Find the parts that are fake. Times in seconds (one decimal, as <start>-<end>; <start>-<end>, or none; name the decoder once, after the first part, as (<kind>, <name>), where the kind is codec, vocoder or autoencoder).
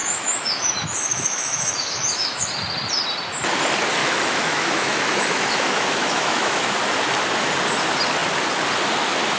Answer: 0.0-2.5 (autoencoder, DAC-VAE); 4.0-6.7